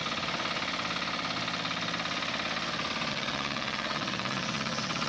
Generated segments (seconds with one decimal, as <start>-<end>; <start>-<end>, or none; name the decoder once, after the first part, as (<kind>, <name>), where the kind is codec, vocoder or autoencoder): 3.1-5.1 (vocoder, WaveNeXt)